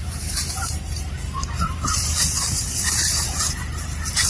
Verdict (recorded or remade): remade